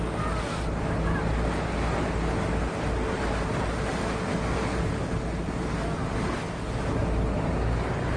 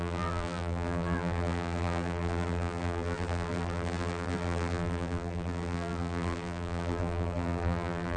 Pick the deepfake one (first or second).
second